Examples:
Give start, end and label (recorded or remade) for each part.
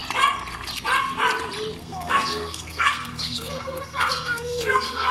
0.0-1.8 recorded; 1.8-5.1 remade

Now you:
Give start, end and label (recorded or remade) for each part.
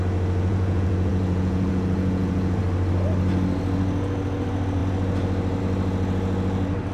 0.0-0.5 recorded; 0.5-2.6 remade; 2.6-6.9 recorded